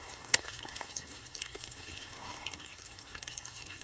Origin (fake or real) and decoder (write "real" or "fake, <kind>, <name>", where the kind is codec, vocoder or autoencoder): fake, codec, SNAC